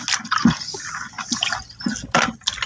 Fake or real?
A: real